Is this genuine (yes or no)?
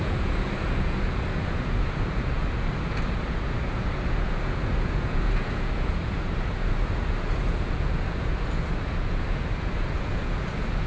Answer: no